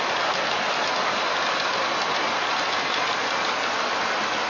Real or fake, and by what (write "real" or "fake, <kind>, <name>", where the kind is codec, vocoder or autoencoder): real